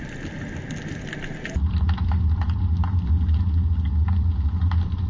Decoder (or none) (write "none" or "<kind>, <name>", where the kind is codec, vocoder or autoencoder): none